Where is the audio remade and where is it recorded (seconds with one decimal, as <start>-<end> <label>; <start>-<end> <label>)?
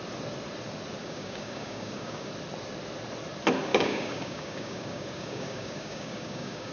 0.0-1.0 recorded; 1.0-2.3 remade; 2.3-3.7 recorded; 3.7-6.7 remade